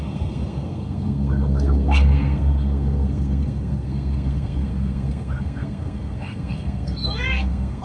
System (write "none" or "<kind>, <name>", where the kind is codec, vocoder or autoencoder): codec, SNAC